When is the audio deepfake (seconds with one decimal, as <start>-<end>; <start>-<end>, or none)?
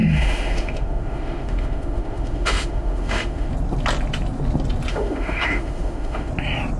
0.0-3.5; 4.9-6.3